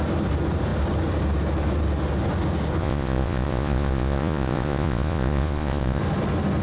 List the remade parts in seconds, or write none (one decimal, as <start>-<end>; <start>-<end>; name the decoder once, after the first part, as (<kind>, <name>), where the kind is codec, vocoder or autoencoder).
2.8-6.0 (vocoder, Vocos)